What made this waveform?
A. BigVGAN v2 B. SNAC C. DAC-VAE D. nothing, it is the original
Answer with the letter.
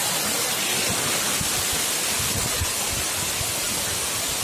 D